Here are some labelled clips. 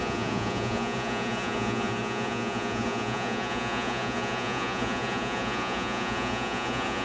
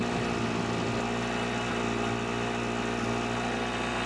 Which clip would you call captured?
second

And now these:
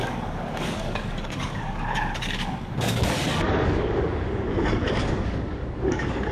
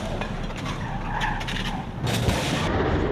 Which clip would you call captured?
second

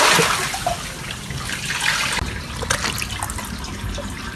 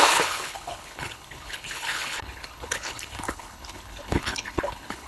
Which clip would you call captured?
first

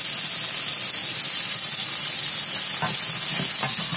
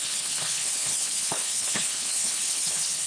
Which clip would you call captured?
first